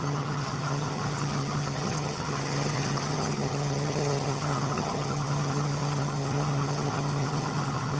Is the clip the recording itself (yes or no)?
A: no